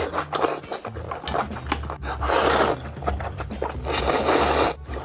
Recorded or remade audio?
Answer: recorded